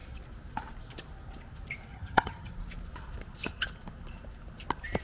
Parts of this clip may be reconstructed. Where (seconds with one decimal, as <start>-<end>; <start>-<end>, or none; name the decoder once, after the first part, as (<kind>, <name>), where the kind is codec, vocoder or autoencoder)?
1.9-2.5 (vocoder, HiFi-GAN)

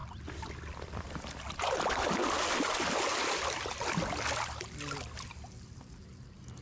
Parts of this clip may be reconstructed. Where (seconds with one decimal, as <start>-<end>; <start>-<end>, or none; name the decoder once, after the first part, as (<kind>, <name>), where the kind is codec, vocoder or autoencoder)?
none

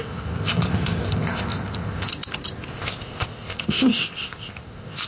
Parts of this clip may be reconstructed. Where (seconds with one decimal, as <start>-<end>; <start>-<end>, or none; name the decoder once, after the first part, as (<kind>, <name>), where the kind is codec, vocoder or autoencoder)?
0.0-2.1 (codec, ZipCodec); 2.7-5.1

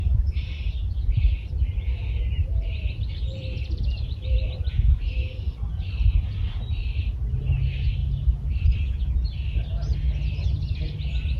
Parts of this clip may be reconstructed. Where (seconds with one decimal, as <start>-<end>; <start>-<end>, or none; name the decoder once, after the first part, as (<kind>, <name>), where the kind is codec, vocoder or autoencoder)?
0.0-4.7 (vocoder, BigVGAN v2)

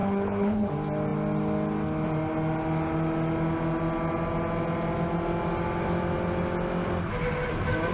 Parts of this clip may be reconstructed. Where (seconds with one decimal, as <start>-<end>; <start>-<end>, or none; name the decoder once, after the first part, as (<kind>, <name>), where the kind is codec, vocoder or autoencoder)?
0.0-0.7 (codec, HILCodec)

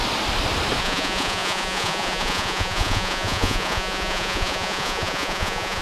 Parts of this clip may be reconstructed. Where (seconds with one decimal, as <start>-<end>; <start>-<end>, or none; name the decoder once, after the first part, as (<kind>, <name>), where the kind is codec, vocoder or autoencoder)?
0.8-5.8 (vocoder, Vocos)